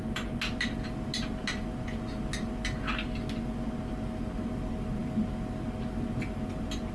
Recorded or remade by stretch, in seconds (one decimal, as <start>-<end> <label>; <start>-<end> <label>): 0.0-6.9 recorded